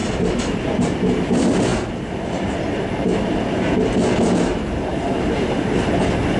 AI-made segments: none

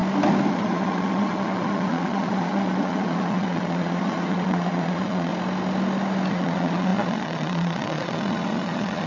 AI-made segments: 0.5-5.3; 6.3-9.1

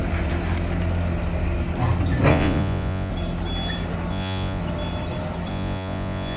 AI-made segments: 2.3-3.1; 4.1-4.6; 5.5-6.4

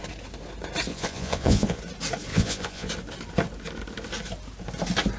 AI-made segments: 0.9-1.8; 2.3-2.9

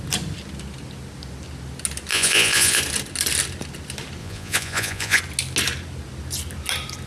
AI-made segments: 2.1-2.8; 4.2-5.2

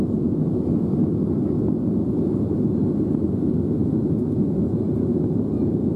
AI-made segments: 3.8-5.2

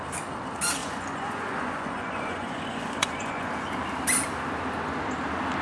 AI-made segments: 0.8-3.5

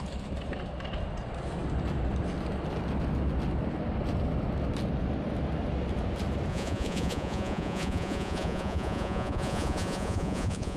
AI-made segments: 6.5-10.8